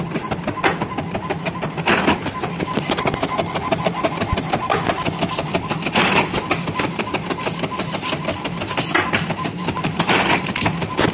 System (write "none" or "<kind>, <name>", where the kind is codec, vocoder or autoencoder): none